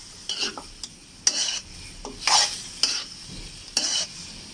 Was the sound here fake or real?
real